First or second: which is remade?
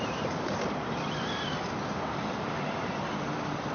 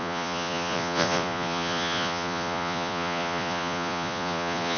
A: second